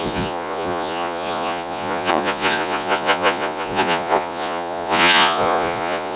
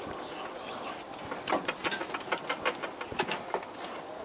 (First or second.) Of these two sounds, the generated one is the first